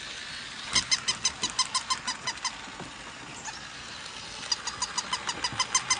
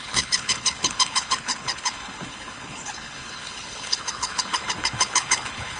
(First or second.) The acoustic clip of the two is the first